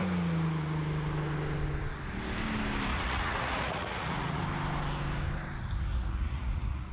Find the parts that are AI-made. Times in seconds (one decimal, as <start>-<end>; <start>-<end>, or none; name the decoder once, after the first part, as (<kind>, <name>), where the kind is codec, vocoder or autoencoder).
2.9-4.4 (vocoder, Vocos); 5.9-6.9